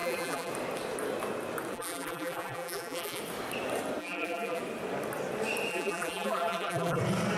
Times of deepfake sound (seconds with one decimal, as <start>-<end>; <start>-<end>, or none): 0.0-0.5; 1.7-3.2; 4.0-4.6; 5.7-7.0